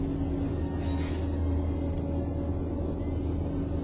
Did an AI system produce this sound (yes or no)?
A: no